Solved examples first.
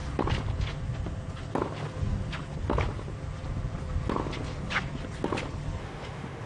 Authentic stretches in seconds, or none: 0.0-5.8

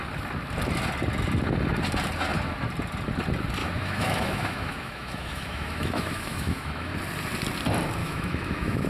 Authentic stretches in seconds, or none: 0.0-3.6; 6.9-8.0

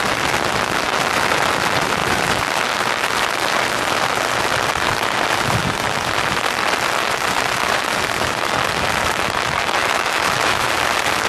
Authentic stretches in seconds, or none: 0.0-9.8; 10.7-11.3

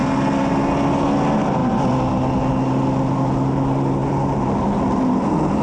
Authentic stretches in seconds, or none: 0.0-5.6

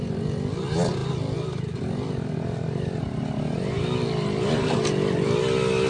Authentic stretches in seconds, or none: 0.0-5.9